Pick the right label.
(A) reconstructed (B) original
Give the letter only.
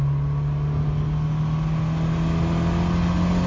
B